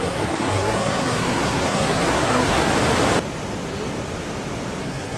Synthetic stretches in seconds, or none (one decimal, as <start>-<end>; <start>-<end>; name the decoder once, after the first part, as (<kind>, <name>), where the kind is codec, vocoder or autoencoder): 0.0-2.7 (codec, SNAC); 4.8-5.2

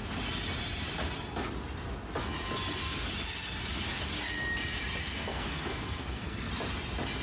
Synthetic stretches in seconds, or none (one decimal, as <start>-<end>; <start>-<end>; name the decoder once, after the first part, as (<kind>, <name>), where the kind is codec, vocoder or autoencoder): 5.0-6.5 (codec, SNAC)

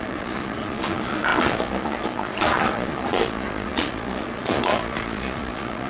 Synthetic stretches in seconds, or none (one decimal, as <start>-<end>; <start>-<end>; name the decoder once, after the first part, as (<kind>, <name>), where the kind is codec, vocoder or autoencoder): 0.0-5.9 (vocoder, Vocos)

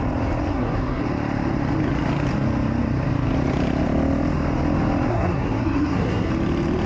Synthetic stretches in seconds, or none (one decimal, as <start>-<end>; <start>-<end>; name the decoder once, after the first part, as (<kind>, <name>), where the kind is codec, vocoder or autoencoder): 0.5-1.0 (codec, SNAC); 5.1-6.3

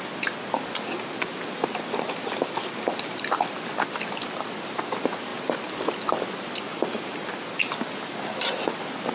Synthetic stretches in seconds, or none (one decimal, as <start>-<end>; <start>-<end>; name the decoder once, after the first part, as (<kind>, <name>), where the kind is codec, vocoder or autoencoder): 6.7-7.3 (vocoder, BigVGAN v2)

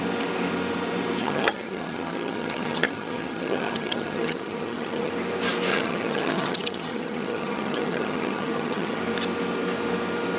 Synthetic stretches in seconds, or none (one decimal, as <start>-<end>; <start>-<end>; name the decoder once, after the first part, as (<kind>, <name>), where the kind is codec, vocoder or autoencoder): 1.2-5.1 (vocoder, HiFi-GAN); 5.7-9.0

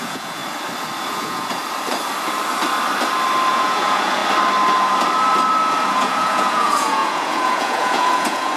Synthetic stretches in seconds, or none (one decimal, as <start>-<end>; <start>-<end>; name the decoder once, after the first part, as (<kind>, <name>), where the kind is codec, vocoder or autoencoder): 0.0-0.4 (vocoder, Vocos); 1.1-1.6; 3.5-4.2; 6.0-8.6